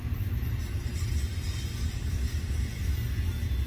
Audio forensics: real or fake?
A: real